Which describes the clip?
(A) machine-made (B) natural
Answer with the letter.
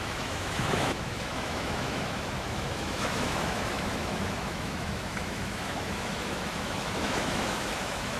A